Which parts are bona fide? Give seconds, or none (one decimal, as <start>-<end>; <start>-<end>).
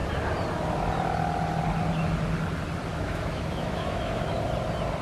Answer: 0.0-2.9; 4.4-5.0